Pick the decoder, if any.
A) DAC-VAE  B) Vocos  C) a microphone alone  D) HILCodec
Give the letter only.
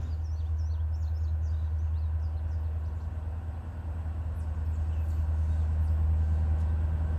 C